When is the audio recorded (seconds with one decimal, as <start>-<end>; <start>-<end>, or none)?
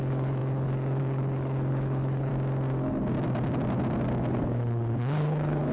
2.3-4.3